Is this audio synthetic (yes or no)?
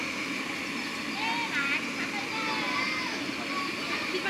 no